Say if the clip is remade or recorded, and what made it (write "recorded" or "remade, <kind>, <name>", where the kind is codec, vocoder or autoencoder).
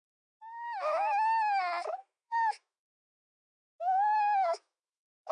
remade, autoencoder, DAC-VAE